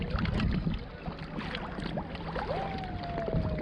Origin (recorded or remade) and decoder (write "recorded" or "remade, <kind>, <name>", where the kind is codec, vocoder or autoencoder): recorded